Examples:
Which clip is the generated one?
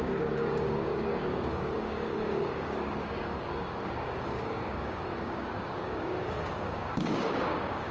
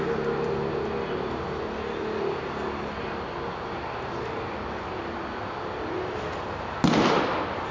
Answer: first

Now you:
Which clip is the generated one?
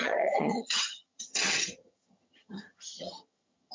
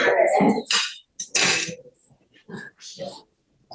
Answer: first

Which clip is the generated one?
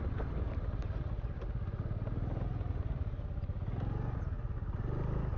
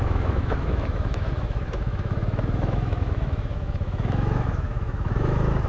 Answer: second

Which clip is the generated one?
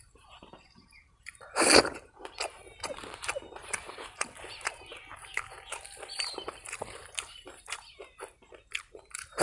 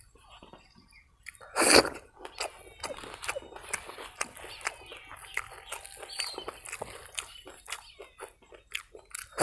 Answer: first